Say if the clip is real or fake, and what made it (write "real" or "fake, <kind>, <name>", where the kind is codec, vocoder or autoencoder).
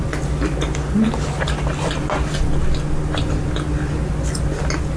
real